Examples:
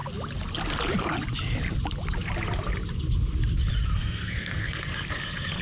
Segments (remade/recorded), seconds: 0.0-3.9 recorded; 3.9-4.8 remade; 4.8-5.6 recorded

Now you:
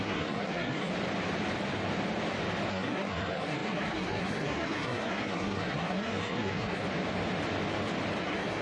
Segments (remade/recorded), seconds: 0.0-0.9 remade; 0.9-2.7 recorded; 2.7-6.8 remade; 6.8-8.2 recorded; 8.2-8.6 remade

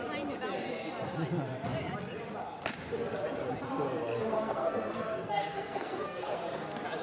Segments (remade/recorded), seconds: 0.0-4.2 recorded; 4.2-6.5 remade; 6.5-7.0 recorded

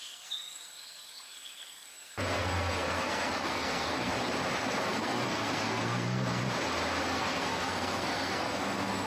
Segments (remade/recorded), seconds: 0.0-4.1 remade; 4.1-4.8 recorded; 4.8-6.4 remade; 6.4-7.0 recorded; 7.0-9.1 remade

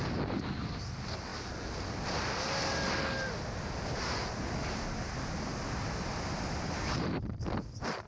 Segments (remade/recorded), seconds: 0.0-8.1 recorded

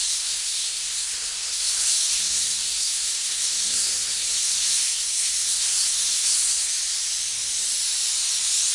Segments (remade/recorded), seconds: 0.0-6.7 remade; 6.7-8.7 recorded

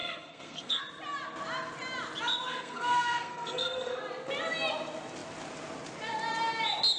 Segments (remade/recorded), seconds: 0.0-0.8 remade; 0.8-2.5 recorded; 2.5-4.0 remade; 4.0-7.0 recorded